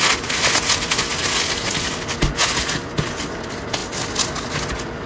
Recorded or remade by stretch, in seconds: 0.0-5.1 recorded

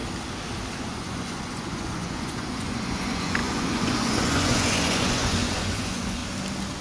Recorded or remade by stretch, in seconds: 0.0-0.8 recorded; 0.8-6.2 remade; 6.2-6.8 recorded

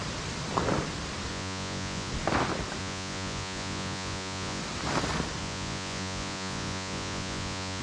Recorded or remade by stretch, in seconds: 0.0-1.3 recorded; 1.3-2.1 remade; 2.1-2.8 recorded; 2.8-4.6 remade; 4.6-5.4 recorded; 5.4-7.8 remade

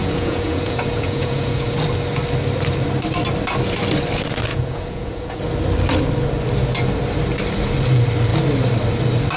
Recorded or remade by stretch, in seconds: 0.0-1.8 remade; 1.8-4.5 recorded; 4.5-5.4 remade; 5.4-9.4 recorded